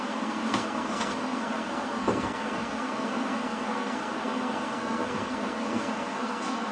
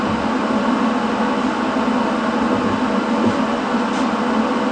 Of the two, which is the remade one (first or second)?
first